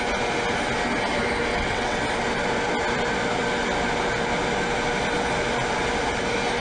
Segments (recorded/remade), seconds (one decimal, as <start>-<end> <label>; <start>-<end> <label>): 0.0-1.5 recorded; 1.5-2.0 remade; 2.0-6.6 recorded

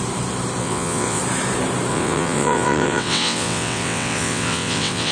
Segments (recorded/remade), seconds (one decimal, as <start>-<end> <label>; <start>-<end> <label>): 0.0-0.6 recorded; 0.6-1.2 remade; 1.2-1.9 recorded; 1.9-5.1 remade

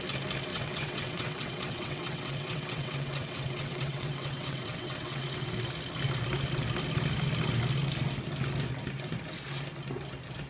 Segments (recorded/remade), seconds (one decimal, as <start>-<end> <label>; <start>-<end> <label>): 0.0-0.5 recorded; 0.5-5.5 remade; 5.5-10.5 recorded

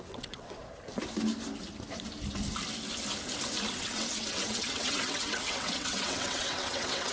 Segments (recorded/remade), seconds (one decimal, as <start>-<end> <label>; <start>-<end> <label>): 0.0-0.6 remade; 0.6-3.7 recorded; 3.7-7.1 remade

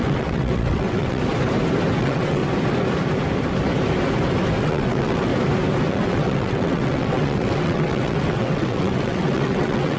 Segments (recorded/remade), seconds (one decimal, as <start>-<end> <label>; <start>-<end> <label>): 0.0-1.2 remade; 1.2-2.0 recorded; 2.0-2.4 remade; 2.4-4.6 recorded; 4.6-5.3 remade; 5.3-5.9 recorded; 5.9-10.0 remade

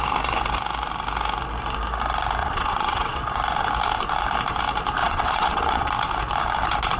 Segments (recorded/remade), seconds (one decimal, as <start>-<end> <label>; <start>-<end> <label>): 0.0-2.4 recorded; 2.4-3.2 remade; 3.2-5.0 recorded; 5.0-5.9 remade; 5.9-7.0 recorded

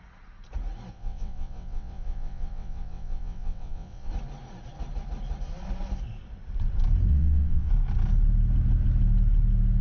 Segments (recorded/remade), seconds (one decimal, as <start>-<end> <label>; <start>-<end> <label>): 0.0-0.9 recorded; 0.9-4.1 remade; 4.1-7.1 recorded; 7.1-7.7 remade; 7.7-9.8 recorded

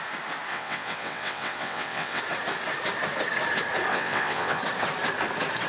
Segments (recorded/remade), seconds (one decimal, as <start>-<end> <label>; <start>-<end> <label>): 0.0-0.5 recorded; 0.5-2.2 remade; 2.2-3.9 recorded; 3.9-4.6 remade; 4.6-5.7 recorded